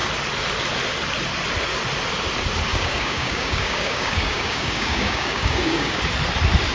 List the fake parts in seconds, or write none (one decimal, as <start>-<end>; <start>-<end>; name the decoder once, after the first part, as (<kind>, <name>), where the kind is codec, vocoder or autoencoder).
2.7-6.0 (codec, DAC)